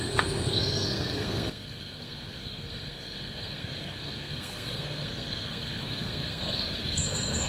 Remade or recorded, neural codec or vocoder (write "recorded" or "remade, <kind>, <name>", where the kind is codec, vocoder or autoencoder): remade, codec, SNAC